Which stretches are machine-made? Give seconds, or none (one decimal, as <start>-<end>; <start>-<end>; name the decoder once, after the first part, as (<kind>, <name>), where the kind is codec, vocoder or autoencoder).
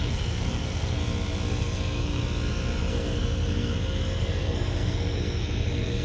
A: 0.0-1.0 (codec, SNAC); 1.6-2.2; 2.8-6.0